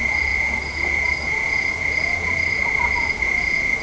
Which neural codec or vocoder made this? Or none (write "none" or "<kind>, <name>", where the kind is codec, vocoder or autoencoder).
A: vocoder, Vocos